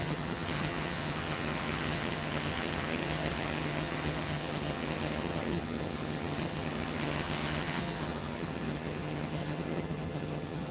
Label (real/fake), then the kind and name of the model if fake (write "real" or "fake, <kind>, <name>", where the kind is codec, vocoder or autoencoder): fake, vocoder, HiFi-GAN